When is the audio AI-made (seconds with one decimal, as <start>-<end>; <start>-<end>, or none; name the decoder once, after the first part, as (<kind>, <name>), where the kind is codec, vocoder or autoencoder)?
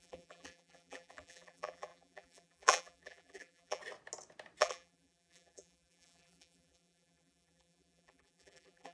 0.0-3.8 (vocoder, BigVGAN v2); 4.6-8.9